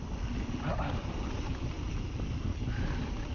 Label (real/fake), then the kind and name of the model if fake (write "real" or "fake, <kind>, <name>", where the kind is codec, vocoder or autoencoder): real